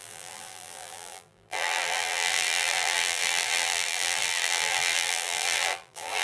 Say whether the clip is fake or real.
fake